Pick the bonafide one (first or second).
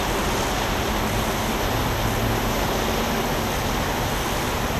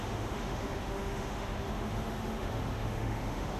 first